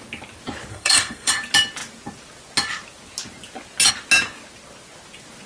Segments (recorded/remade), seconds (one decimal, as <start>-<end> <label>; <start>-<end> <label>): 0.0-0.7 recorded; 0.7-1.3 remade; 1.3-5.5 recorded